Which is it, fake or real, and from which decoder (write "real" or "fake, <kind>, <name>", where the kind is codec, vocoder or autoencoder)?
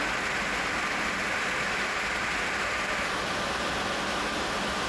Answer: real